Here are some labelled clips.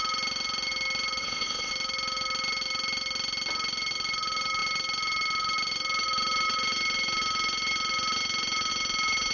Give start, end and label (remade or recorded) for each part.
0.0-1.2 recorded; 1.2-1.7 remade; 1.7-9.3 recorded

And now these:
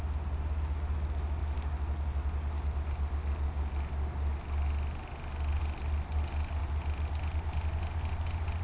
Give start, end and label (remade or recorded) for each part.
0.0-8.6 recorded